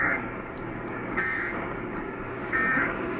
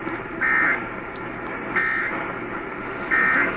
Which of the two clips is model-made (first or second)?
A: first